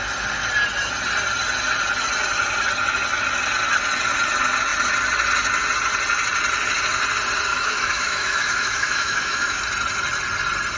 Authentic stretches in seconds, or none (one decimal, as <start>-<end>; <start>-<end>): 0.0-7.5; 9.6-10.8